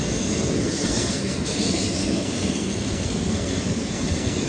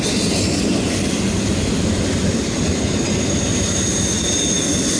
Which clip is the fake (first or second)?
first